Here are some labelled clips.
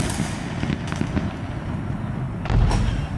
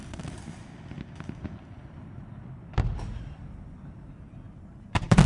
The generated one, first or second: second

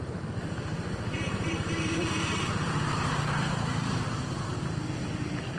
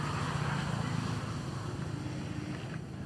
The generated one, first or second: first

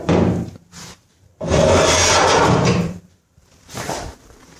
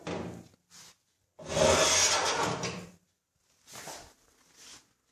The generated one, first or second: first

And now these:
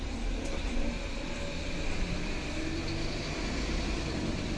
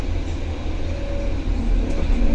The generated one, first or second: first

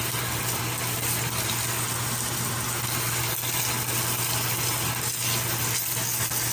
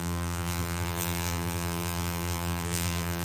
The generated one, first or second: second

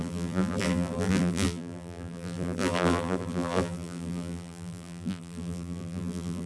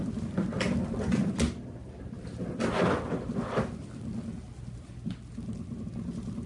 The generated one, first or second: first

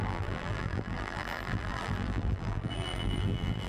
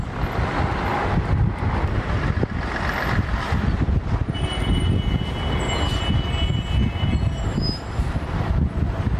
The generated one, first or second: first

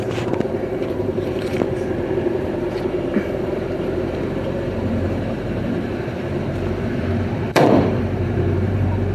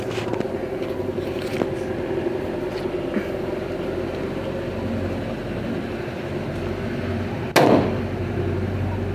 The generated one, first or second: first